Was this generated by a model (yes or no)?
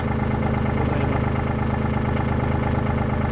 no